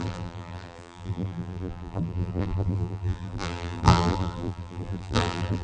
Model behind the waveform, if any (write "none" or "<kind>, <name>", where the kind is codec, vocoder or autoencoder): vocoder, BigVGAN v2